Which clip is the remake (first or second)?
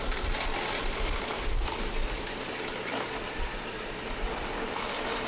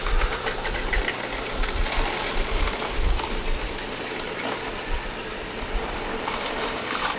second